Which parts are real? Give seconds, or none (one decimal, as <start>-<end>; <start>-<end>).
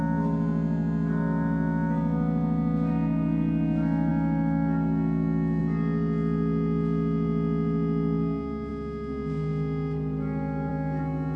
0.0-11.4